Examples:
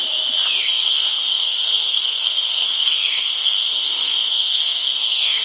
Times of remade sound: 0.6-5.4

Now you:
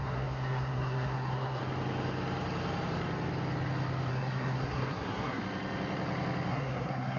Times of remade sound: 0.0-1.6; 4.1-5.4; 6.5-7.2

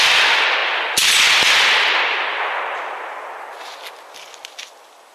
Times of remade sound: none